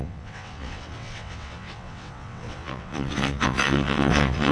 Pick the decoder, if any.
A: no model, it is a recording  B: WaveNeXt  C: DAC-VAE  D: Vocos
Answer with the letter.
B